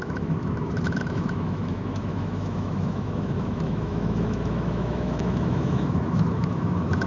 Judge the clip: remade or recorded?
remade